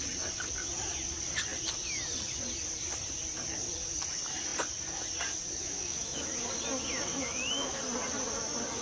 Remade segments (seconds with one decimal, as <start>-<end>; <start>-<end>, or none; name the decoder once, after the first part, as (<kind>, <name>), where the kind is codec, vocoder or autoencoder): 5.6-6.3 (autoencoder, DAC-VAE); 7.1-7.8